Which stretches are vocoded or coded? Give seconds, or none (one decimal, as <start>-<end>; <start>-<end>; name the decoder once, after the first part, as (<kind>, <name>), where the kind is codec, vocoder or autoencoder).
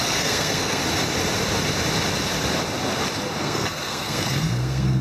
0.0-0.8 (codec, SNAC); 3.4-5.0